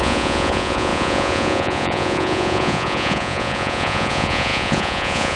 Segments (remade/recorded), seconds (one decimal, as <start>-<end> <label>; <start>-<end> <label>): 0.0-5.4 remade